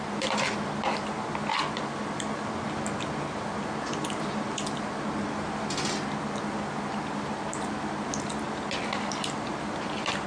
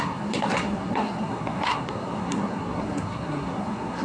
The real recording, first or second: first